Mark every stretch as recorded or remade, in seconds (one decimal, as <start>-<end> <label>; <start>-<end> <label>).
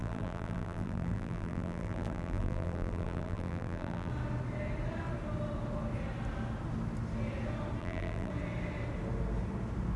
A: 0.0-4.1 remade; 4.1-7.8 recorded; 7.8-8.3 remade; 8.3-10.0 recorded